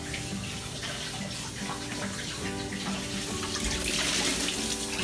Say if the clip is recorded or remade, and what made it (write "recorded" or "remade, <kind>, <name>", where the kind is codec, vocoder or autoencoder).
recorded